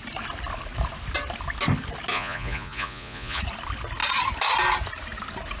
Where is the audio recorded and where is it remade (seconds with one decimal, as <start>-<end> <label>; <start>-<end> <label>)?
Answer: 0.0-2.1 recorded; 2.1-3.4 remade; 3.4-5.6 recorded